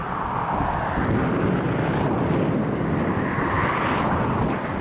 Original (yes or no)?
yes